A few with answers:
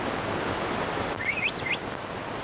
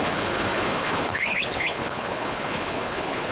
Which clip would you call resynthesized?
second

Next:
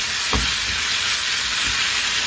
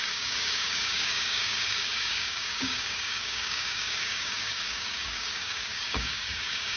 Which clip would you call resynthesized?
second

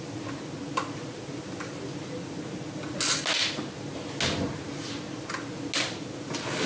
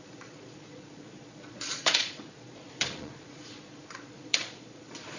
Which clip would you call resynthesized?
second